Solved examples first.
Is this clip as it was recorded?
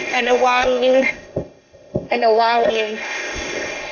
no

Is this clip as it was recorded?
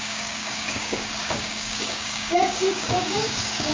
no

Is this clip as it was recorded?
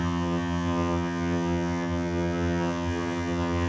no